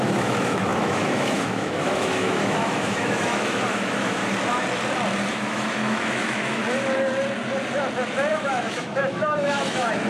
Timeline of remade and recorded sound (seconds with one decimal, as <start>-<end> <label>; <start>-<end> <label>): 0.0-4.2 remade; 4.2-5.3 recorded; 5.3-6.6 remade; 6.6-8.3 recorded; 8.3-10.1 remade